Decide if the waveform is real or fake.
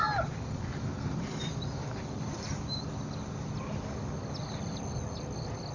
real